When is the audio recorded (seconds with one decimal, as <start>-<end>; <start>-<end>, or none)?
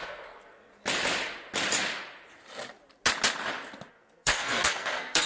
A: 0.7-3.9